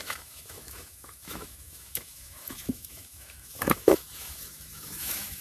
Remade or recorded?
remade